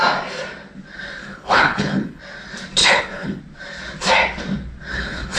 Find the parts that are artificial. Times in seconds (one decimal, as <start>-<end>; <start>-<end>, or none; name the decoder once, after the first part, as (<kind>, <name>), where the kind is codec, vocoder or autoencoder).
1.2-2.2 (codec, HILCodec); 2.8-3.4; 4.9-5.4